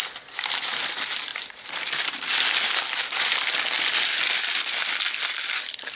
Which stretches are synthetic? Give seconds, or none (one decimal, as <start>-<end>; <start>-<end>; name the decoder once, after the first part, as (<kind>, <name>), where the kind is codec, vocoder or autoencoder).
0.0-6.0 (vocoder, BigVGAN v2)